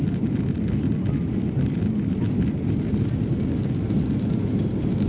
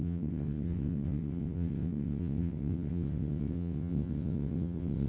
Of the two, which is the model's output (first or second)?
second